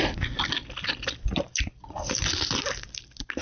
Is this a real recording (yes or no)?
yes